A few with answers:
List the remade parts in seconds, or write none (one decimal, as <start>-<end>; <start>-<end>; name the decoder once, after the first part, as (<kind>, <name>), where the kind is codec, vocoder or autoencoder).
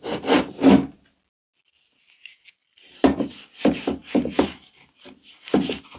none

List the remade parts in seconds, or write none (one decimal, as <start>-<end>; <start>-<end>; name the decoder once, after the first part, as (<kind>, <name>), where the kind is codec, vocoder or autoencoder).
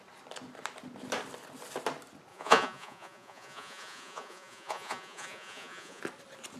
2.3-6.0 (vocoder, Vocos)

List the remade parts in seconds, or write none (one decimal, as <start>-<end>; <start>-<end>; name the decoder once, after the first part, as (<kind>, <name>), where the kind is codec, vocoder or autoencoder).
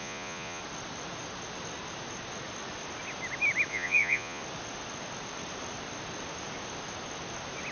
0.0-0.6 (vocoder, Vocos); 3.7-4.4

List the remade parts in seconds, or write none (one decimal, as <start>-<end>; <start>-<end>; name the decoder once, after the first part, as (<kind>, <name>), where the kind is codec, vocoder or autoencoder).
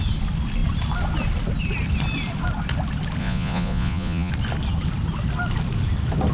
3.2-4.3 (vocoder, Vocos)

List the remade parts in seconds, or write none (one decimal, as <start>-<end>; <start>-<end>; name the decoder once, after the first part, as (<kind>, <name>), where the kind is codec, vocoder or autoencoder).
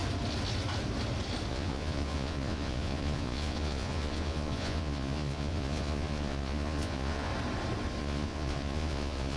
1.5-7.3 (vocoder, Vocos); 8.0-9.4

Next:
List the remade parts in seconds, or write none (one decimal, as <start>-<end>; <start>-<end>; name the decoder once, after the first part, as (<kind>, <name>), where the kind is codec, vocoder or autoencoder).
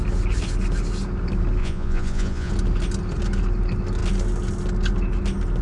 1.6-2.5 (vocoder, Vocos)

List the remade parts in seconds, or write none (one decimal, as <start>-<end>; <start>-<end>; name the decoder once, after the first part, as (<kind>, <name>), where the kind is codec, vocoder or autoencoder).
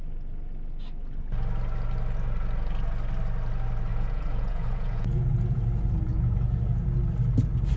3.9-7.0 (vocoder, Vocos)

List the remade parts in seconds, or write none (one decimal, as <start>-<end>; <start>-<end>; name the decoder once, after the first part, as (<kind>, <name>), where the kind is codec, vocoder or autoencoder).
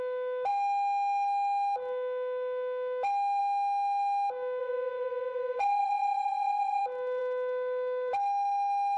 4.6-6.8 (vocoder, Vocos)